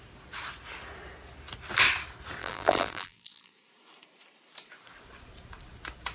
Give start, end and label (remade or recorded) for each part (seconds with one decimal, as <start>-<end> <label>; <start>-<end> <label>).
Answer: 0.0-2.4 recorded; 2.4-3.5 remade; 3.5-6.1 recorded